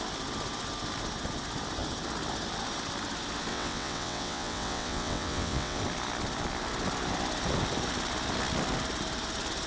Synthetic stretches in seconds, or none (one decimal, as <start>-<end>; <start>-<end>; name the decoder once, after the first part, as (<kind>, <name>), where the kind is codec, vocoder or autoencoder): 3.5-5.8 (vocoder, WaveNeXt)